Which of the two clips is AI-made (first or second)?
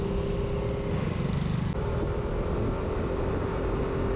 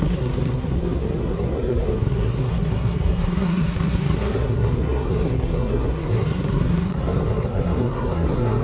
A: second